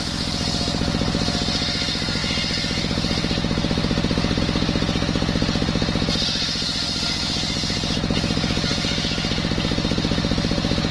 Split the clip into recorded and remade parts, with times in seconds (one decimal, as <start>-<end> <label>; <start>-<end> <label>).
0.0-10.9 recorded